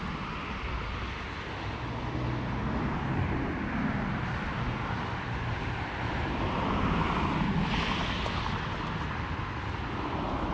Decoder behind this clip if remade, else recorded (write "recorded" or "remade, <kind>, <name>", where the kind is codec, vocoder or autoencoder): recorded